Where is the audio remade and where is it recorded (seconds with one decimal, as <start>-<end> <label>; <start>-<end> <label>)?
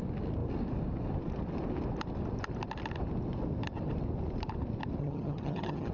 0.0-5.0 recorded; 5.0-5.9 remade